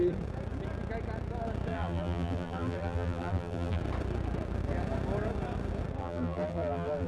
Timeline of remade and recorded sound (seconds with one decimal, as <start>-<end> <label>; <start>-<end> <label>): 0.0-1.7 recorded; 1.7-3.8 remade; 3.8-6.0 recorded; 6.0-7.1 remade